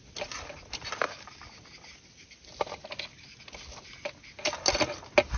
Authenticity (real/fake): real